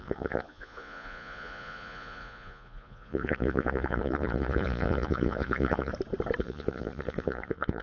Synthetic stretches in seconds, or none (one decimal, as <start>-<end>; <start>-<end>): 0.0-5.9; 6.4-7.8